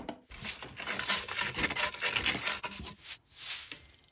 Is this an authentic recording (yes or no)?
yes